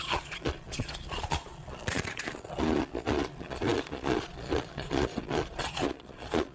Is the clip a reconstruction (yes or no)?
yes